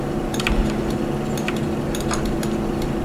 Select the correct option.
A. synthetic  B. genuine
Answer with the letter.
B